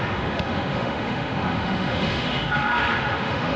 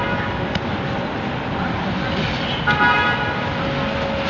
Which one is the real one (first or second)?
second